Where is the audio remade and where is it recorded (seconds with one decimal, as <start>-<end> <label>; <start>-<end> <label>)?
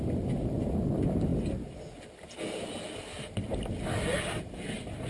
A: 0.0-5.1 recorded